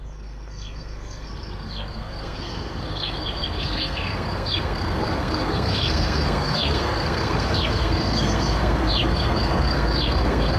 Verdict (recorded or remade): remade